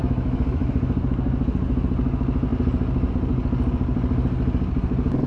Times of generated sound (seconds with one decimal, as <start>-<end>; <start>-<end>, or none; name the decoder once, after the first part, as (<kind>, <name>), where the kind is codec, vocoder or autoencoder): 0.0-0.7 (autoencoder, DAC-VAE)